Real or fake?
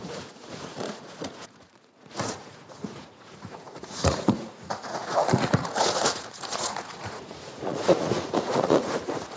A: fake